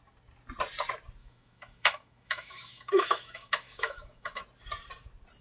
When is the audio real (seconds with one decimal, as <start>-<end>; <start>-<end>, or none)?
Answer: 0.0-1.2; 4.4-5.4